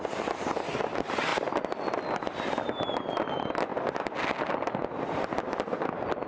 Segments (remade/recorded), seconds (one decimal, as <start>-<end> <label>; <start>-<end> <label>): 0.0-6.3 recorded